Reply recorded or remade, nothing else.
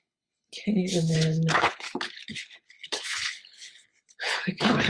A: remade